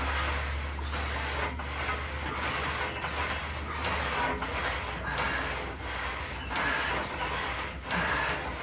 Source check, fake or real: real